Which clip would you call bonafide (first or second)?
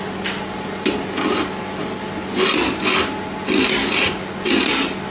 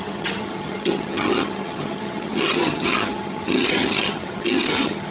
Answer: first